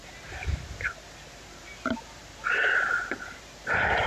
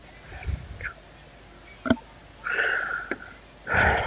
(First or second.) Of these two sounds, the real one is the second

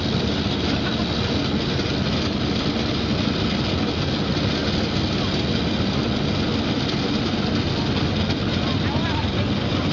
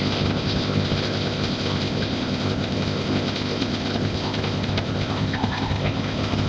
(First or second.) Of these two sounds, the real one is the first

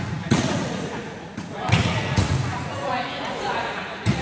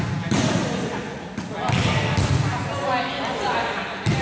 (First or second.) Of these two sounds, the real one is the second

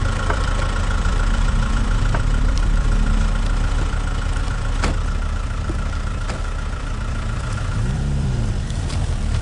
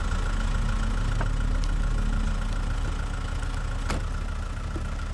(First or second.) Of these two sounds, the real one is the second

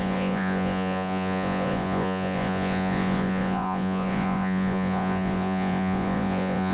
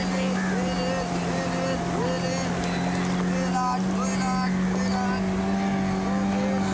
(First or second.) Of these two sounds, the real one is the second